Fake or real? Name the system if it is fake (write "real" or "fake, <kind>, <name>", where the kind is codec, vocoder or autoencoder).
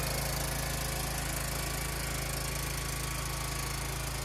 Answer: real